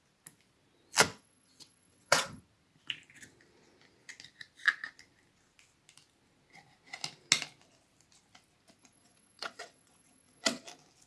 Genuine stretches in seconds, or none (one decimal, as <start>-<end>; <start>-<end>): 0.0-1.1; 2.4-8.8; 10.6-11.1